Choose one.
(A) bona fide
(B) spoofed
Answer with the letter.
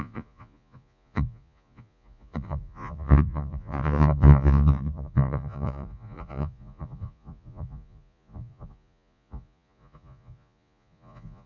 B